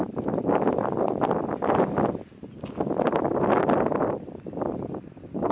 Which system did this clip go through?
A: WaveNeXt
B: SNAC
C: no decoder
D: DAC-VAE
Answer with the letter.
C